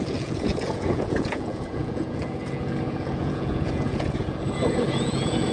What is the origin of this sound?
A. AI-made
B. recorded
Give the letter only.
A